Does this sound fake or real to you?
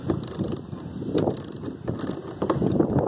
real